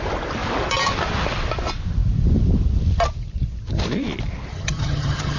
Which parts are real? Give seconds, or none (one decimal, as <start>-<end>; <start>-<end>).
0.0-4.5